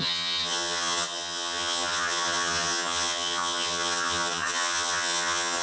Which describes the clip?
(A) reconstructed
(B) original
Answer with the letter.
A